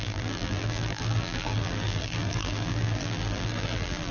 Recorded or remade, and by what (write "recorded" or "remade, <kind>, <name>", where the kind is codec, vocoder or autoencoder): remade, vocoder, BigVGAN v2